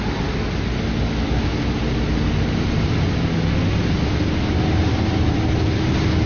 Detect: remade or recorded recorded